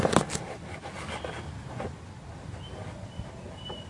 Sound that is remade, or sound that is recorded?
recorded